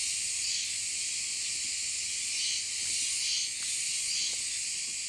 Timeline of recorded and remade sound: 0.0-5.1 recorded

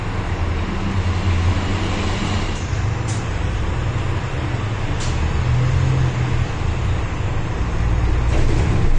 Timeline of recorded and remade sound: 0.0-1.7 recorded; 1.7-3.6 remade; 3.6-9.0 recorded

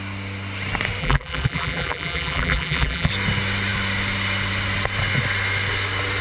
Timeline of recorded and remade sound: 0.0-1.0 recorded; 1.0-3.1 remade; 3.1-6.2 recorded

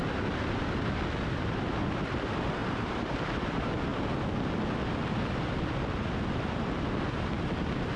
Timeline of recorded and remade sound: 0.0-2.6 recorded; 2.6-3.2 remade; 3.2-8.0 recorded

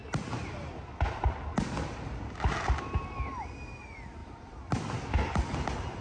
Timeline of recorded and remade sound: 0.0-4.2 recorded; 4.2-4.9 remade; 4.9-6.0 recorded

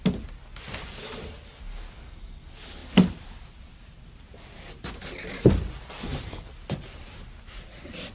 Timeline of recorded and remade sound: 0.0-6.1 recorded; 6.1-7.3 remade; 7.3-8.1 recorded

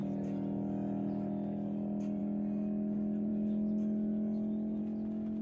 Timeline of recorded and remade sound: 0.0-5.4 recorded

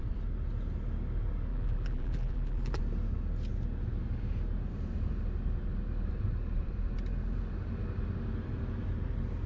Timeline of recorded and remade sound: 0.0-1.5 recorded; 1.5-2.8 remade; 2.8-9.5 recorded